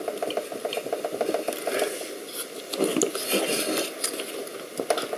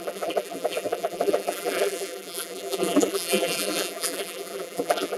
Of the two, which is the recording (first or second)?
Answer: first